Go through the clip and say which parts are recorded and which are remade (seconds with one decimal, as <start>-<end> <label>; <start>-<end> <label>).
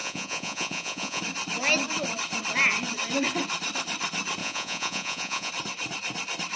0.0-1.2 remade; 1.2-4.4 recorded; 4.4-5.5 remade; 5.5-6.6 recorded